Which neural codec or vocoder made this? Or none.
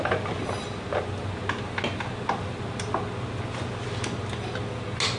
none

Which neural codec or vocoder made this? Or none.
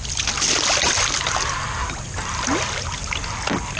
none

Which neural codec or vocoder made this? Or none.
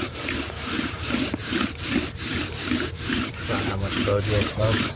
vocoder, BigVGAN v2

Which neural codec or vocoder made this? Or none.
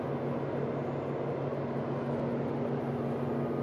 none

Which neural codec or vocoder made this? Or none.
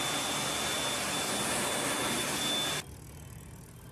none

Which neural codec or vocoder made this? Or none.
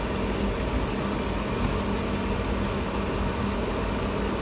none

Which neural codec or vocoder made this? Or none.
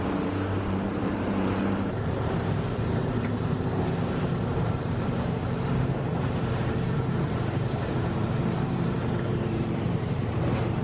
vocoder, BigVGAN v2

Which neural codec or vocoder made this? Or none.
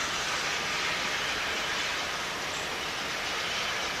vocoder, BigVGAN v2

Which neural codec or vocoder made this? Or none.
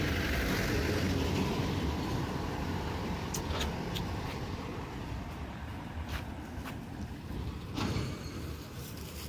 vocoder, BigVGAN v2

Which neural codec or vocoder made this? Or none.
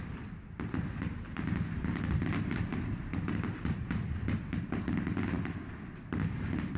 vocoder, BigVGAN v2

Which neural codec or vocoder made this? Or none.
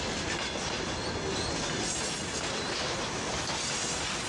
none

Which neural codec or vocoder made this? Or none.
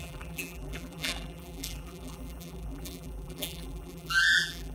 vocoder, BigVGAN v2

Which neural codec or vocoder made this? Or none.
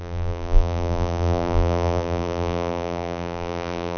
vocoder, BigVGAN v2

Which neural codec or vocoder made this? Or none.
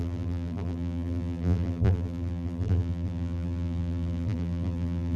vocoder, BigVGAN v2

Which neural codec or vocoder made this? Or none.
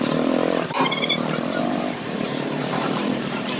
vocoder, BigVGAN v2